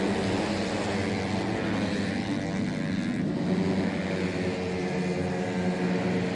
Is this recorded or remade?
recorded